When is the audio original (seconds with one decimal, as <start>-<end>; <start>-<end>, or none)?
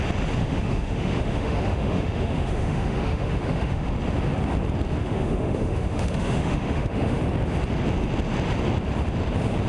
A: 0.0-0.4; 3.9-5.0; 7.2-9.7